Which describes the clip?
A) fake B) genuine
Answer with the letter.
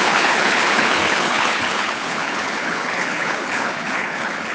A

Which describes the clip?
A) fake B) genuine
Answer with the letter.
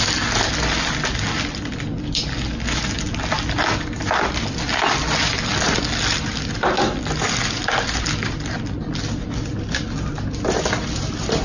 B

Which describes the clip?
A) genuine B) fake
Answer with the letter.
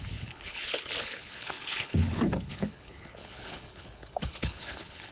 B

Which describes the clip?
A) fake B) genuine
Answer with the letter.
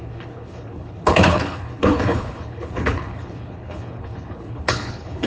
A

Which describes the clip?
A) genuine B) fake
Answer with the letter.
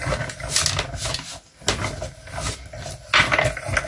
A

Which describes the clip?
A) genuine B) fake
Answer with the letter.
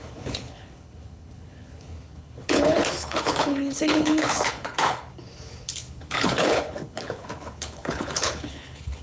B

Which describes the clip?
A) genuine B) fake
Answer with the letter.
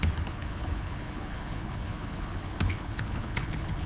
B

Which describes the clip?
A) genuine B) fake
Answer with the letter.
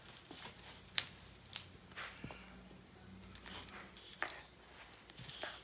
A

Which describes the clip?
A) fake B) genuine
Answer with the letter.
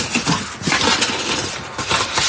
B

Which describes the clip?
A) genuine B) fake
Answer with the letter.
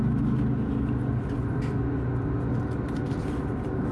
A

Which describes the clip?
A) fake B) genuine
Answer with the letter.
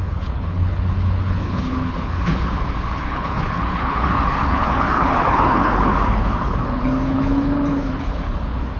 A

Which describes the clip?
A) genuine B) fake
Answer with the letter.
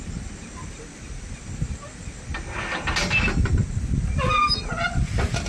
A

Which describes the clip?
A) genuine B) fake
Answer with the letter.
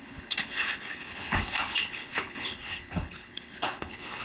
B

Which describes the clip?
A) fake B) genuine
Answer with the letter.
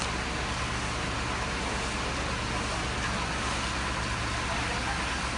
B